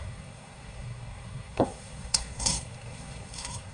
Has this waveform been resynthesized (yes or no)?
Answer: yes